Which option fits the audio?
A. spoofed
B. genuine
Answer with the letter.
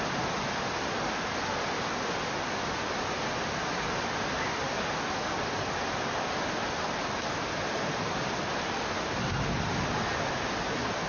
B